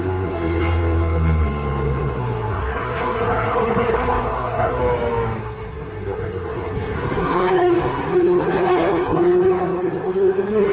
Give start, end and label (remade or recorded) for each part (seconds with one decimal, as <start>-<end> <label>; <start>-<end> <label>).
0.0-4.8 remade; 4.8-5.4 recorded; 5.4-10.7 remade